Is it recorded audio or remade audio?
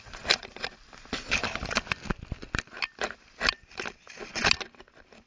recorded